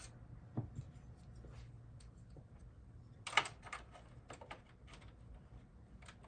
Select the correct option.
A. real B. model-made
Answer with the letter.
A